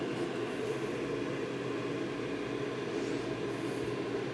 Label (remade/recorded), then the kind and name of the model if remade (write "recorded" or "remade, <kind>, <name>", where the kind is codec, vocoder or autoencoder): recorded